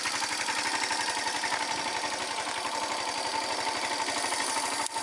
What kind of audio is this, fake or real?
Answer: real